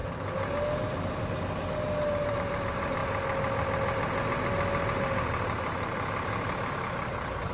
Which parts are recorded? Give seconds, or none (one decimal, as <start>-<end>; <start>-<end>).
0.0-2.3; 3.0-7.5